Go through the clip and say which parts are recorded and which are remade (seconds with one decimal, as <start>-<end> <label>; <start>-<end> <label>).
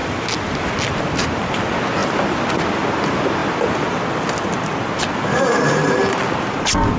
0.0-7.0 recorded